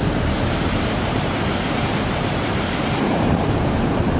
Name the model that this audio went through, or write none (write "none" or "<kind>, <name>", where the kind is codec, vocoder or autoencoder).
vocoder, BigVGAN v2